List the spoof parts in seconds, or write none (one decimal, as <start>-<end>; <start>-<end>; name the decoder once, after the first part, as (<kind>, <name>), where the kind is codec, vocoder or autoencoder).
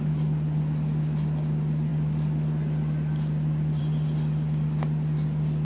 none